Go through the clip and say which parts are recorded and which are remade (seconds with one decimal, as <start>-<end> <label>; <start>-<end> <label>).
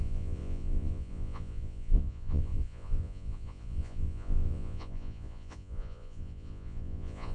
0.0-7.3 remade